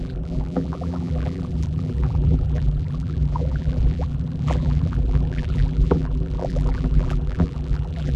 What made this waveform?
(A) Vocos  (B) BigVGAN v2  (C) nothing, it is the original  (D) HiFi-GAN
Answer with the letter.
B